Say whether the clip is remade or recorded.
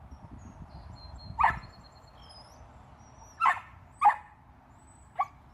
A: recorded